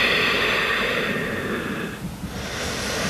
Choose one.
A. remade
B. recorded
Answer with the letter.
B